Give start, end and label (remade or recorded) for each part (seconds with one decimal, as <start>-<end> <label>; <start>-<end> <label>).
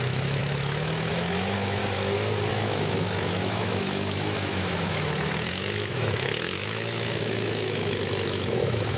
0.0-1.8 remade; 1.8-2.5 recorded; 2.5-9.0 remade